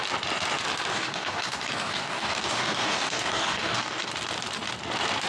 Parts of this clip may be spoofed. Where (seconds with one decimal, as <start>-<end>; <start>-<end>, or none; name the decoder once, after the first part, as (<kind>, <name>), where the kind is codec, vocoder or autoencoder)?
0.9-4.1 (codec, DAC)